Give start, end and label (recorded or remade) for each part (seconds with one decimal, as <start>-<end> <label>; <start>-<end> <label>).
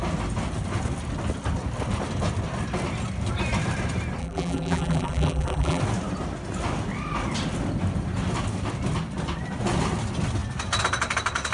0.0-4.2 recorded; 4.2-5.8 remade; 5.8-11.5 recorded